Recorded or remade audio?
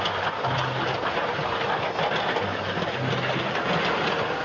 recorded